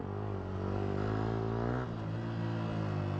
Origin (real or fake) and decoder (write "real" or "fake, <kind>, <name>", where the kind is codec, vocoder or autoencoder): real